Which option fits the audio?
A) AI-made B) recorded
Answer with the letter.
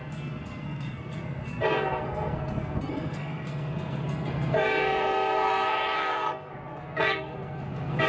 A